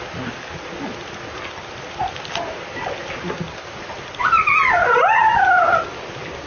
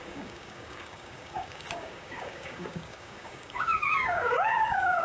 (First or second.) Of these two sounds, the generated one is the second